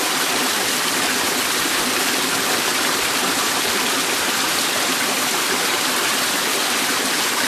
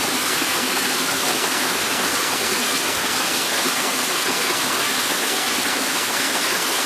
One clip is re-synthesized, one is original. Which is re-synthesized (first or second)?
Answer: second